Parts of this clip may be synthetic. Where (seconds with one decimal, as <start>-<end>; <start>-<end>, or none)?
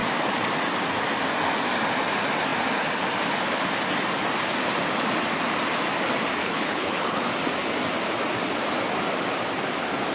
6.4-7.2